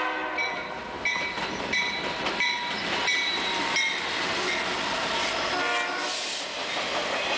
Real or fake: real